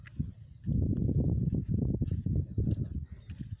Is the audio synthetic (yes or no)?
no